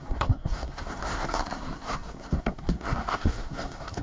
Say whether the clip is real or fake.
fake